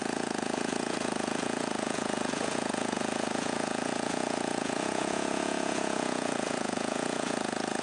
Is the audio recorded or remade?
remade